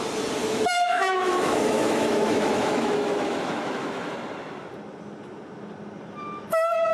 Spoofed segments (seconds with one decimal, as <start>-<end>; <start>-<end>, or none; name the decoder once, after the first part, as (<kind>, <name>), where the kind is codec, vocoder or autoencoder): 0.4-4.1 (autoencoder, DAC-VAE)